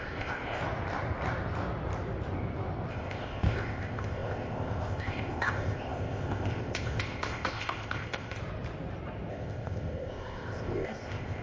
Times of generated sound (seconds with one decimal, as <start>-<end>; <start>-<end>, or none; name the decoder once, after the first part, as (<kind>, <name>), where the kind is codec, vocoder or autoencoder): 0.0-0.6 (codec, ZipCodec); 2.9-8.4; 9.3-11.4

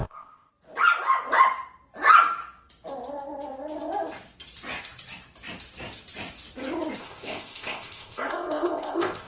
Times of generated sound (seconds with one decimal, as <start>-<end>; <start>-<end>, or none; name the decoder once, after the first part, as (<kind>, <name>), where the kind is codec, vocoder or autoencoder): 0.0-0.5 (codec, ZipCodec); 7.0-9.3

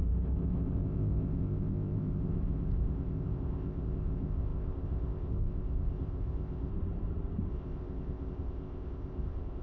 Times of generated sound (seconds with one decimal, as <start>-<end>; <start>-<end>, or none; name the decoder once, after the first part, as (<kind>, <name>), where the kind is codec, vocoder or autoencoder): 0.0-6.7 (codec, ZipCodec); 7.5-9.6

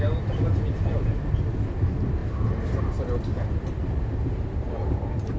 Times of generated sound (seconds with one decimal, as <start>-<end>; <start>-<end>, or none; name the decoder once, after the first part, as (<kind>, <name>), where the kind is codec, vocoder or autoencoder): none

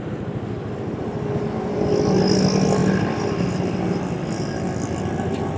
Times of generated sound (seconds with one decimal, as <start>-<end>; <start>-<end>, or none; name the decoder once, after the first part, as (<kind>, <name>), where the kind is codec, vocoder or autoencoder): none

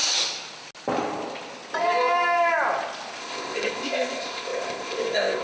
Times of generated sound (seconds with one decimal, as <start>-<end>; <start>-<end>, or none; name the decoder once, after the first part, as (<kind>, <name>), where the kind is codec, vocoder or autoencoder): 3.2-5.4 (codec, ZipCodec)